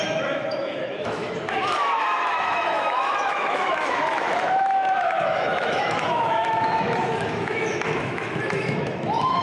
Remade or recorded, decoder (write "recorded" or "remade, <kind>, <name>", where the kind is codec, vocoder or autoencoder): remade, autoencoder, DAC-VAE